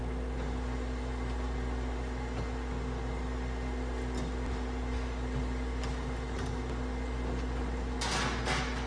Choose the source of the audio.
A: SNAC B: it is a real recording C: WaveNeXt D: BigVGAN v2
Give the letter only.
B